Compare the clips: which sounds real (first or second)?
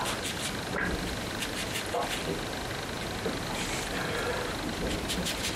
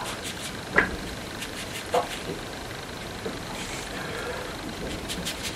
first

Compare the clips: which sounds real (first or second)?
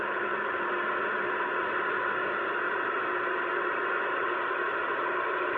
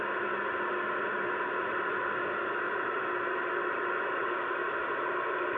second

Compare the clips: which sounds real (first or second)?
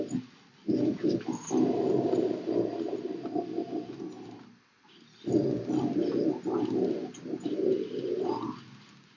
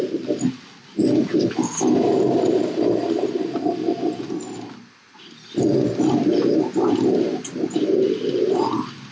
first